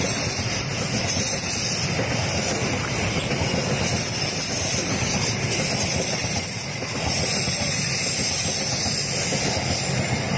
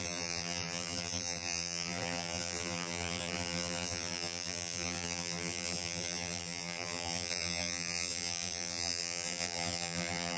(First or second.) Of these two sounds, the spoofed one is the second